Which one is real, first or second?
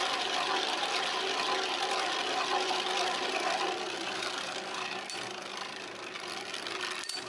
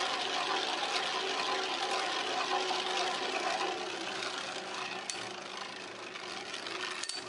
second